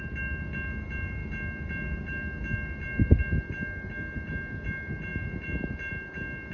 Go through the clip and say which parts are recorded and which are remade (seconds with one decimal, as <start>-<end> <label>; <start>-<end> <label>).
0.0-6.5 recorded

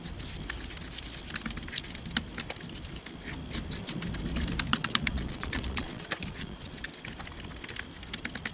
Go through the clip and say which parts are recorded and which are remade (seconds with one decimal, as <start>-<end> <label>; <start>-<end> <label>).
0.0-4.7 recorded; 4.7-6.9 remade; 6.9-8.5 recorded

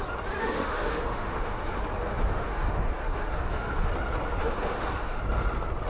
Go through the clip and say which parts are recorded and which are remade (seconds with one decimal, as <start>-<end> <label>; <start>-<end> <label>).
0.0-0.4 recorded; 0.4-1.8 remade; 1.8-2.3 recorded; 2.3-3.9 remade; 3.9-4.4 recorded; 4.4-5.2 remade; 5.2-5.9 recorded

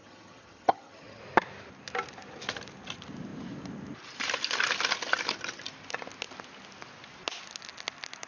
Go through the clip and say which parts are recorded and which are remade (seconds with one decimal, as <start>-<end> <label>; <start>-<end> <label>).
0.0-1.2 remade; 1.2-8.3 recorded

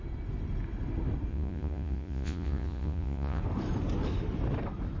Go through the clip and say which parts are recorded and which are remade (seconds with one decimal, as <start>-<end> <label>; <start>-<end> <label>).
0.0-1.3 recorded; 1.3-3.4 remade; 3.4-5.0 recorded